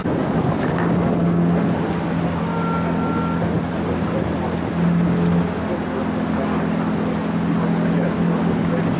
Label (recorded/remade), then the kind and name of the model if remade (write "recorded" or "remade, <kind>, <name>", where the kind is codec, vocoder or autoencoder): recorded